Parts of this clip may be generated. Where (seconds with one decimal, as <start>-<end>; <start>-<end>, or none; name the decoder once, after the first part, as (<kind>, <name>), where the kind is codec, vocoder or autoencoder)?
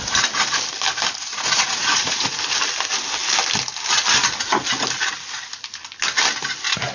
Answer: 1.3-2.3 (vocoder, Vocos)